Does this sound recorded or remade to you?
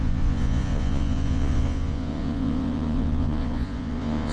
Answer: remade